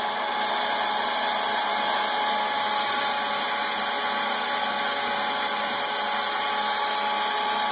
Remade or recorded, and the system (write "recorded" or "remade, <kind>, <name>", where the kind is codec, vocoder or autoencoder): recorded